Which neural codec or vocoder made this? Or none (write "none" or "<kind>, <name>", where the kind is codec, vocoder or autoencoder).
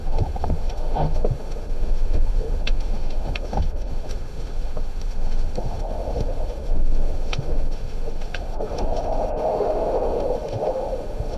autoencoder, DAC-VAE